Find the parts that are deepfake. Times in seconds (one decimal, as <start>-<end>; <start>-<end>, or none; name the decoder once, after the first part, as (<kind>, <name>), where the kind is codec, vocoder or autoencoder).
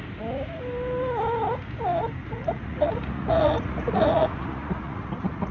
2.2-5.5 (vocoder, Vocos)